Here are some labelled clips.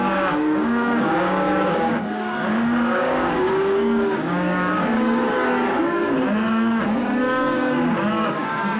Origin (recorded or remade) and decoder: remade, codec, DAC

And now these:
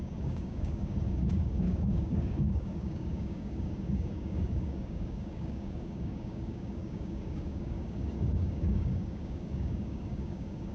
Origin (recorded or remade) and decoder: remade, codec, DAC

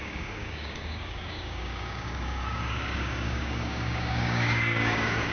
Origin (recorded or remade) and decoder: remade, codec, DAC